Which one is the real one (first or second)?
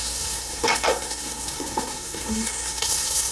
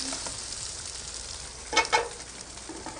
second